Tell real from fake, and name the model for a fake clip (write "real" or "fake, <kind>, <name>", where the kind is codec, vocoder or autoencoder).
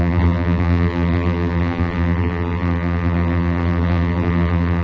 fake, vocoder, BigVGAN v2